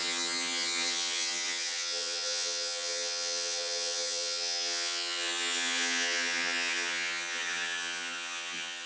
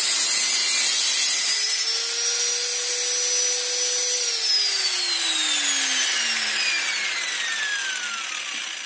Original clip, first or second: second